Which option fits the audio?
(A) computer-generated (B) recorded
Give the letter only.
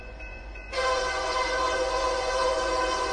A